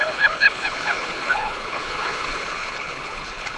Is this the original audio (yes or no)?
no